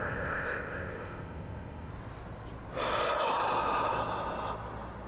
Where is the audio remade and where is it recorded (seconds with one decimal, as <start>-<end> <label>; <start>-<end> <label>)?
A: 0.0-1.9 remade; 1.9-5.1 recorded